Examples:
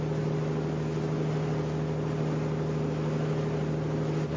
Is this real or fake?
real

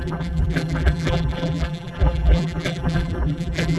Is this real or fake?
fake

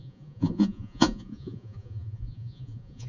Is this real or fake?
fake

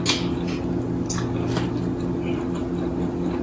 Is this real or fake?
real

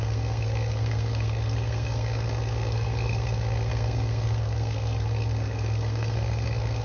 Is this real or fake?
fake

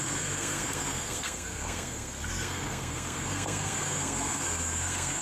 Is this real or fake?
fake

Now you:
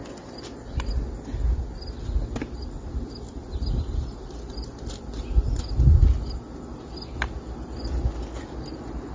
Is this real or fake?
real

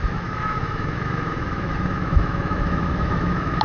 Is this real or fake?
fake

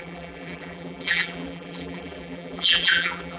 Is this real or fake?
fake